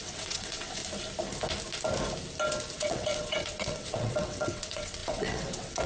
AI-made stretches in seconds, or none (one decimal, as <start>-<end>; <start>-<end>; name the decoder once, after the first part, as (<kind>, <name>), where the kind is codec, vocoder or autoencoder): 0.0-0.8 (vocoder, WaveNeXt); 2.7-5.9